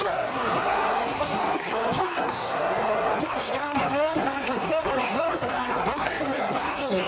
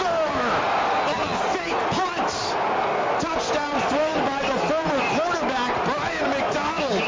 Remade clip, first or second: first